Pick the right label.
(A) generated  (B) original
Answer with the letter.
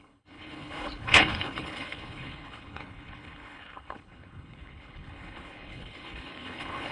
A